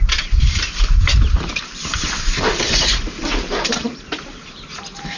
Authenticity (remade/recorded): remade